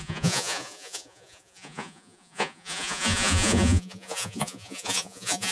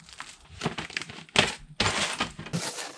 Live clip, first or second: second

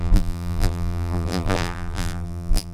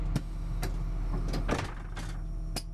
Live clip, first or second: second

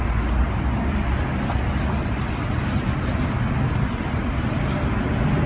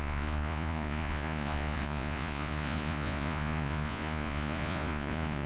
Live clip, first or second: first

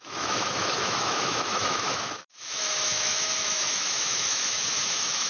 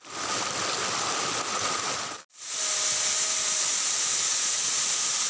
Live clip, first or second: second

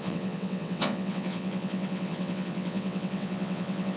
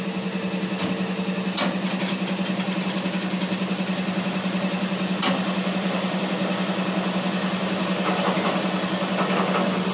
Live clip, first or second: second